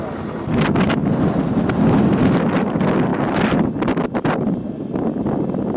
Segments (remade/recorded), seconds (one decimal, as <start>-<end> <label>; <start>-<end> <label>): 0.0-3.1 recorded; 3.1-5.8 remade